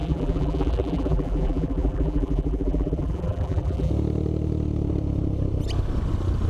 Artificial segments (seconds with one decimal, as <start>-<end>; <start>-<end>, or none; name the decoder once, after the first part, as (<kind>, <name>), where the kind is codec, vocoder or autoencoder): 0.0-3.9 (vocoder, BigVGAN v2)